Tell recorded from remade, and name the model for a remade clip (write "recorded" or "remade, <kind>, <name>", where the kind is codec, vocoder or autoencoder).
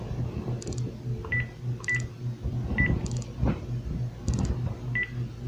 recorded